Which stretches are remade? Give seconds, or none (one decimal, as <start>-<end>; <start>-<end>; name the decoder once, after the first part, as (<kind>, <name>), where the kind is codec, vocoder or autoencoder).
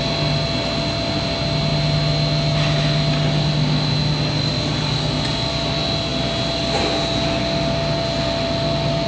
none